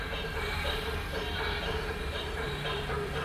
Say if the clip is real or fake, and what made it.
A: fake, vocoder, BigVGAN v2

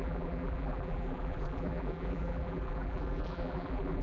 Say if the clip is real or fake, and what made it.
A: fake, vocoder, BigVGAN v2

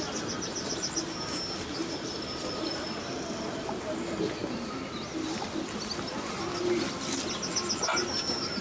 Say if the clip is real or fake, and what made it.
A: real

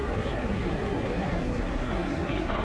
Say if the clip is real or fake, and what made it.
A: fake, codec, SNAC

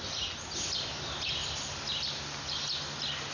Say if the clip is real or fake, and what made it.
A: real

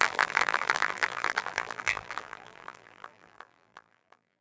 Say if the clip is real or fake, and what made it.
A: fake, vocoder, BigVGAN v2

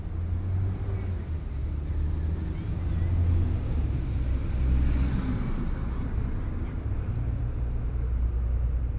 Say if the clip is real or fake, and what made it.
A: real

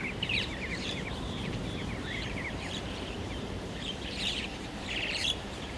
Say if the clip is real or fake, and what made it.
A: fake, vocoder, BigVGAN v2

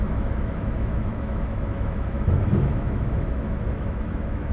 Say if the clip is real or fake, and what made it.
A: fake, autoencoder, DAC-VAE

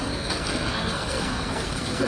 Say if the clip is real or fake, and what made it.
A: fake, codec, SNAC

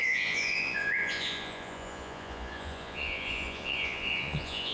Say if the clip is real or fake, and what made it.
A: fake, vocoder, Vocos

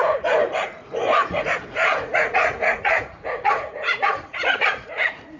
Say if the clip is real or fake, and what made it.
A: fake, vocoder, Vocos